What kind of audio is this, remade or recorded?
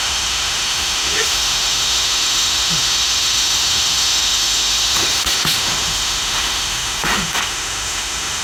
remade